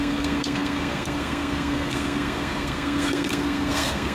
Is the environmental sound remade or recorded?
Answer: remade